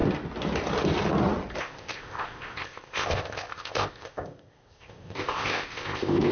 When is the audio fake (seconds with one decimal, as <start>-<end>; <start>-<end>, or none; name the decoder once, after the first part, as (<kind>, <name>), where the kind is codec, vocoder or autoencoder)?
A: 1.6-6.3 (codec, ZipCodec)